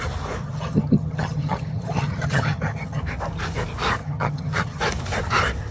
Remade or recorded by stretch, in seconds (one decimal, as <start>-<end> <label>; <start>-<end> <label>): 0.0-0.4 recorded; 0.4-3.0 remade; 3.0-4.0 recorded; 4.0-4.8 remade; 4.8-5.7 recorded